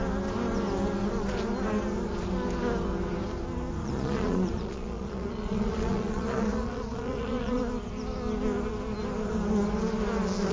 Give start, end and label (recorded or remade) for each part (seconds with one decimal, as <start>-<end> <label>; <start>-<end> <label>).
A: 0.0-3.8 recorded; 3.8-7.6 remade; 7.6-10.5 recorded